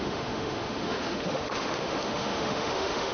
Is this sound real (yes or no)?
no